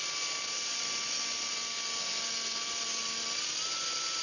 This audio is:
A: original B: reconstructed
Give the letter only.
A